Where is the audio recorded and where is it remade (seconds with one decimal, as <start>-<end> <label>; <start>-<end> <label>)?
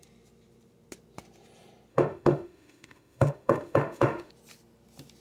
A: 0.0-1.9 recorded; 1.9-4.3 remade; 4.3-5.2 recorded